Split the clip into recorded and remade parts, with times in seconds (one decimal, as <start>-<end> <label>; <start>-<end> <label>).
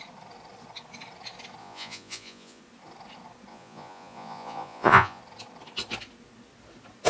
0.0-1.6 recorded; 1.6-2.6 remade; 2.6-3.5 recorded; 3.5-5.2 remade; 5.2-7.1 recorded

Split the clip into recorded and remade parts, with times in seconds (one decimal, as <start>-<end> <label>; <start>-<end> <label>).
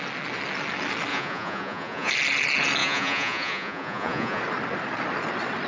0.0-1.1 recorded; 1.1-2.1 remade; 2.1-2.8 recorded; 2.8-4.4 remade; 4.4-5.7 recorded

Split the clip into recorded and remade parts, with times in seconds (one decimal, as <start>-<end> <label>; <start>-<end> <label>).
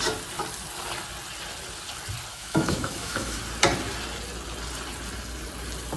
0.0-2.3 recorded; 2.3-3.4 remade; 3.4-6.0 recorded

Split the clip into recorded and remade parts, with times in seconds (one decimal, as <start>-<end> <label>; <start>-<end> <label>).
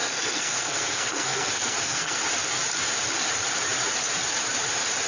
0.0-2.2 remade; 2.2-5.1 recorded